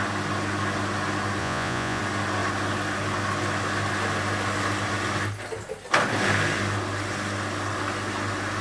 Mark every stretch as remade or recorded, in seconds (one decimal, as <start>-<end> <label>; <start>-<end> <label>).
0.0-1.4 recorded; 1.4-2.0 remade; 2.0-8.6 recorded